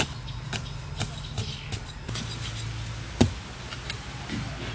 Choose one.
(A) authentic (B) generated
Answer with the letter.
A